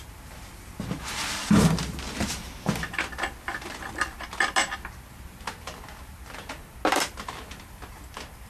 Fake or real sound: real